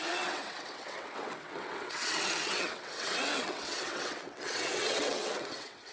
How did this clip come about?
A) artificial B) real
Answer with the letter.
A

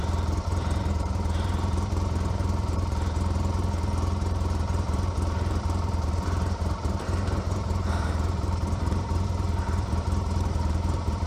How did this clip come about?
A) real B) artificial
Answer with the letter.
B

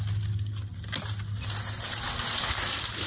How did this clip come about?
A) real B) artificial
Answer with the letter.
A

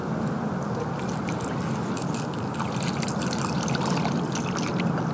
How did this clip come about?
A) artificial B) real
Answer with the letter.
B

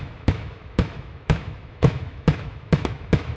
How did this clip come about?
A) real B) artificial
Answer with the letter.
B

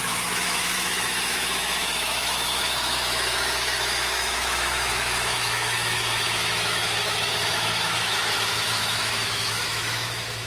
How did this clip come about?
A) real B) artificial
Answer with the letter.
B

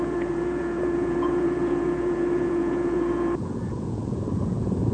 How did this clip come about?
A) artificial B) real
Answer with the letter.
A